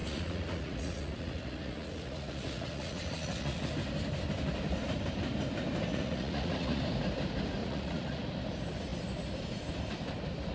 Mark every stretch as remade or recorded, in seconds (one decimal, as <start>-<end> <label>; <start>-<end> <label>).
0.0-3.7 remade; 3.7-5.9 recorded; 5.9-6.8 remade; 6.8-7.6 recorded; 7.6-8.3 remade; 8.3-10.5 recorded